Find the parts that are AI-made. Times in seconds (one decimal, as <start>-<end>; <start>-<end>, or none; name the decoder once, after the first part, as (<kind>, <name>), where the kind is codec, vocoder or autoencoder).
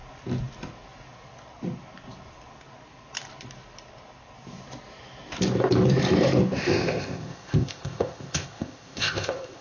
6.6-9.6 (codec, ZipCodec)